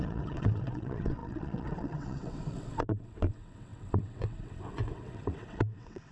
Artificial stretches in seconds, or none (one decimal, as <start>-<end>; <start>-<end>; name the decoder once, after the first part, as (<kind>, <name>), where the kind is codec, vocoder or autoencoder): 0.0-6.1 (vocoder, WaveNeXt)